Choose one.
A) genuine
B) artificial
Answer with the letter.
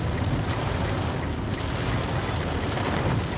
A